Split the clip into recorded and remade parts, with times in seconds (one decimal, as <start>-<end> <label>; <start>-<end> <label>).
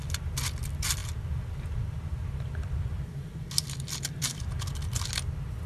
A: 0.0-5.7 recorded